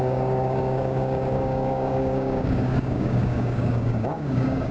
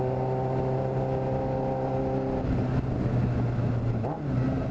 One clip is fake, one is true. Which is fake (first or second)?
first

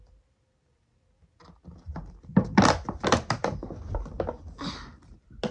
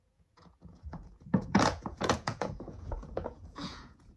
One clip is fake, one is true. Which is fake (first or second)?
second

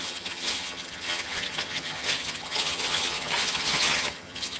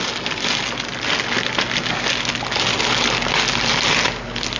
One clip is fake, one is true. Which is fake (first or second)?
first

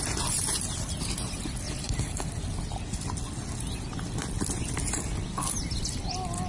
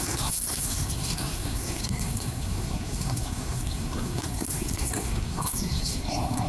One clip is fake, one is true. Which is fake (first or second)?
second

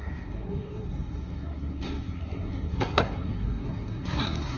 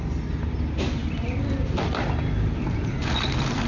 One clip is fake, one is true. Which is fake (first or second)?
first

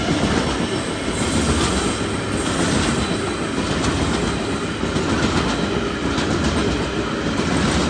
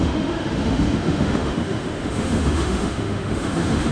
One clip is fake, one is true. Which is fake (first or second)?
second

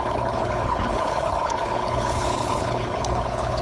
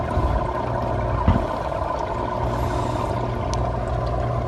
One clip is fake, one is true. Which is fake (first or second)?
first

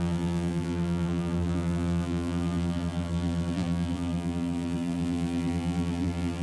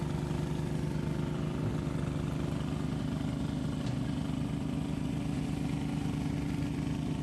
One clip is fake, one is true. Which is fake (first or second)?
first